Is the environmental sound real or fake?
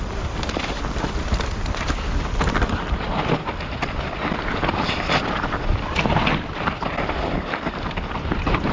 fake